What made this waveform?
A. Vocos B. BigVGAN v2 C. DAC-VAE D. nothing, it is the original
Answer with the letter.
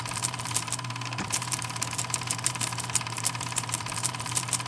B